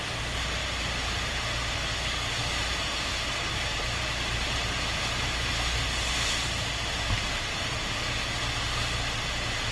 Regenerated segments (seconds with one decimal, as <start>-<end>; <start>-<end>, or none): 0.6-1.3; 3.7-6.0